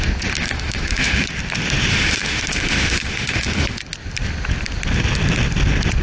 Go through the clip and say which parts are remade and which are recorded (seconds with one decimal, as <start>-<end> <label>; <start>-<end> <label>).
0.0-0.4 recorded; 0.4-1.3 remade; 1.3-1.9 recorded; 1.9-3.8 remade; 3.8-6.0 recorded